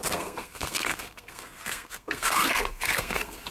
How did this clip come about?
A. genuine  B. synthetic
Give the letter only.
B